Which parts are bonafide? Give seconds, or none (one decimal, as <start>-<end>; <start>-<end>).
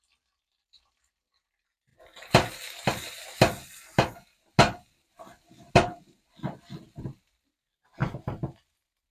0.0-8.0; 8.7-9.1